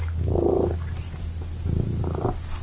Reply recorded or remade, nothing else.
recorded